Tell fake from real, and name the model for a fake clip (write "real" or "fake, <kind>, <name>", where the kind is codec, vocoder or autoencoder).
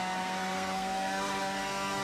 fake, codec, SNAC